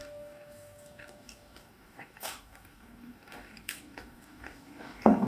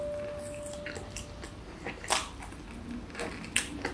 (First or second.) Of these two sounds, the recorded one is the second